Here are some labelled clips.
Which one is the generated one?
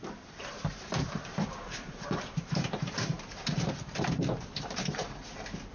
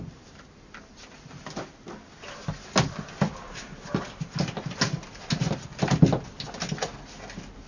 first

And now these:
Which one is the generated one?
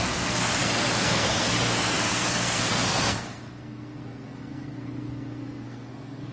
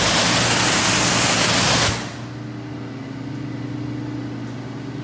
first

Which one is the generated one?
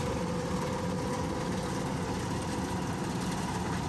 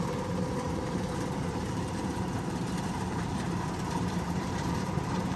second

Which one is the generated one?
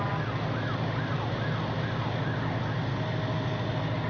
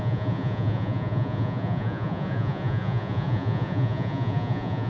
second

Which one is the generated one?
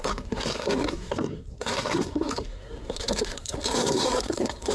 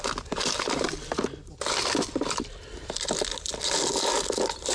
first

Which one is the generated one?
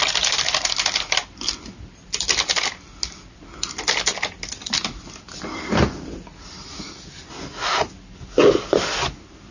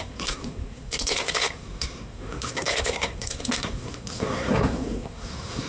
second